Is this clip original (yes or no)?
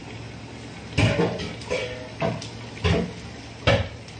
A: yes